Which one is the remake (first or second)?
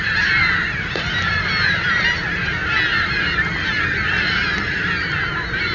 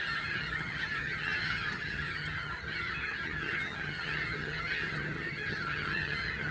second